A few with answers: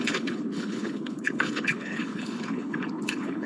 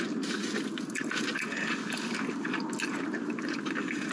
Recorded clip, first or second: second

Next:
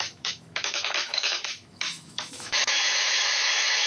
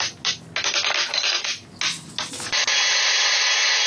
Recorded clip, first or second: second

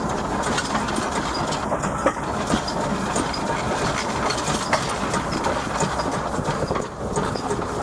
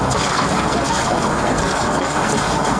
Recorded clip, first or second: first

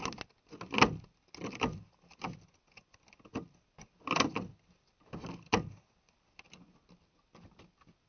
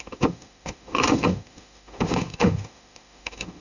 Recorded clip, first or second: first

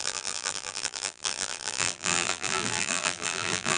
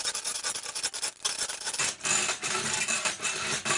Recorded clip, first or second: second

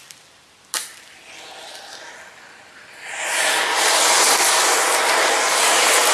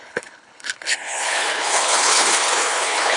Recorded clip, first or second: first